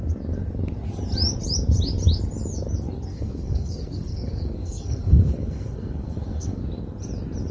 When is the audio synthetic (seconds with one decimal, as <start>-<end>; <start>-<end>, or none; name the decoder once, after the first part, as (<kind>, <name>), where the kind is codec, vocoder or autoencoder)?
3.1-6.6 (codec, SNAC)